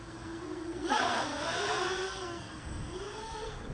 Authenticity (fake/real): fake